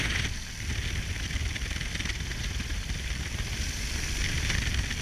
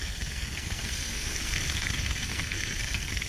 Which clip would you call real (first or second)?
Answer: first